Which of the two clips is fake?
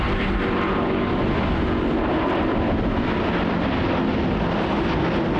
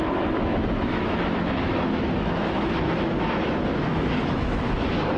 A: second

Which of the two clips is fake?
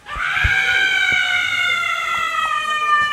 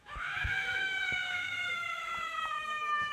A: second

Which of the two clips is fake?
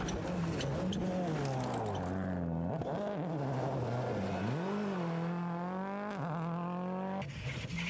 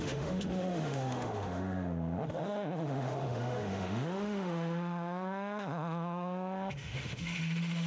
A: second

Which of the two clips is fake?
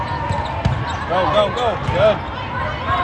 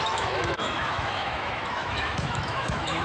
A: second